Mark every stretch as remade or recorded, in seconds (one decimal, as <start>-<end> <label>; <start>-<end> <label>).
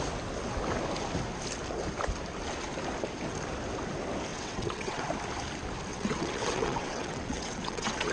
0.0-4.3 recorded; 4.3-5.0 remade; 5.0-5.9 recorded; 5.9-8.1 remade